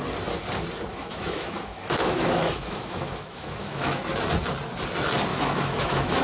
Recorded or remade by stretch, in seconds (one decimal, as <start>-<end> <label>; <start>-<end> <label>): 0.0-0.9 recorded; 0.9-4.0 remade; 4.0-5.3 recorded; 5.3-6.2 remade